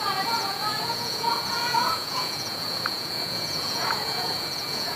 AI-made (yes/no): yes